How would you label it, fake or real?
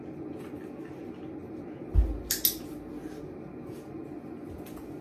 real